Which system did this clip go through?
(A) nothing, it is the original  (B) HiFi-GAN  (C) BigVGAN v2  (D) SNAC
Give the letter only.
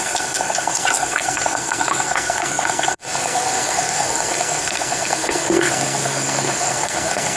D